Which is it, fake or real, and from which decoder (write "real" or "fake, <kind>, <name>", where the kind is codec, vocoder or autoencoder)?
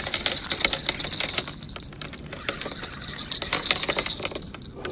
real